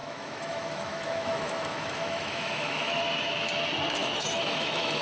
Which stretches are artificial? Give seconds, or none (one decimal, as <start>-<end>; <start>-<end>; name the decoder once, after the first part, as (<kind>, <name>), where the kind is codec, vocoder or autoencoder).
0.0-3.0 (autoencoder, DAC-VAE); 4.0-5.0